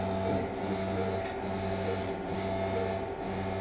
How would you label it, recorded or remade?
recorded